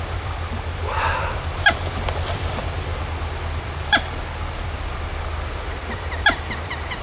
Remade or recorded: remade